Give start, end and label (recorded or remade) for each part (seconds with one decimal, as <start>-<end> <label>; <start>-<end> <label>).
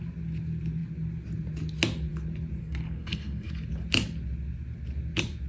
0.0-2.6 recorded; 2.6-3.5 remade; 3.5-5.5 recorded